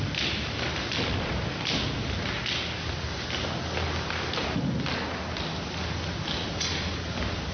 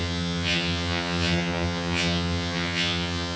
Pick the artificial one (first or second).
second